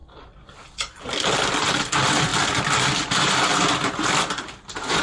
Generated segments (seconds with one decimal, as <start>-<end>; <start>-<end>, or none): 0.0-2.3; 3.0-5.0